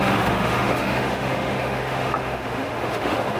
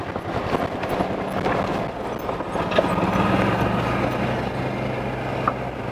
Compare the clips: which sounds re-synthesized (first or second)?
first